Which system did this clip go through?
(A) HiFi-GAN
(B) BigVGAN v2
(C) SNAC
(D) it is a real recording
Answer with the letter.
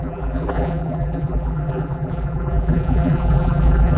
B